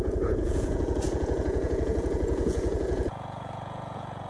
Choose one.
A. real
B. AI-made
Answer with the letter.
B